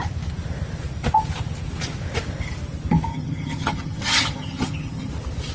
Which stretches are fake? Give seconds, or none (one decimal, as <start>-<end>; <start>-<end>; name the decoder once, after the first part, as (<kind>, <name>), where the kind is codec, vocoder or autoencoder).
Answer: 3.1-5.1 (vocoder, HiFi-GAN)